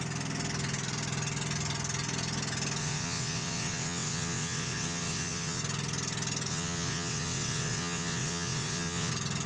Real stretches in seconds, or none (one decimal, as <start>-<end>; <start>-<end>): 0.0-2.8; 5.6-6.5; 9.1-9.5

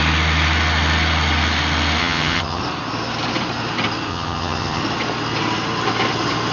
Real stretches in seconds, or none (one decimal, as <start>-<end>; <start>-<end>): 0.0-2.0; 2.6-4.1; 4.8-6.5

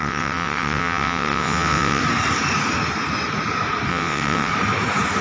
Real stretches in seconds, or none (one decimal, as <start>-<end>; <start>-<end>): 2.0-3.9; 4.5-5.2